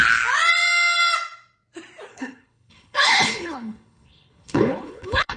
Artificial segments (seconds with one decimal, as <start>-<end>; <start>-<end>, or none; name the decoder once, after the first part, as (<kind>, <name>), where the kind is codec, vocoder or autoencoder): 2.1-5.4 (codec, HILCodec)